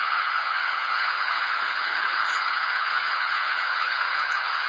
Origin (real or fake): fake